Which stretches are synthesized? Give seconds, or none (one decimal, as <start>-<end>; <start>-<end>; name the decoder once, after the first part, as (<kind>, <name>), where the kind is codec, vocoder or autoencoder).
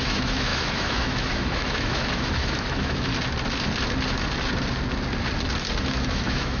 0.0-3.1 (autoencoder, DAC-VAE); 5.8-6.6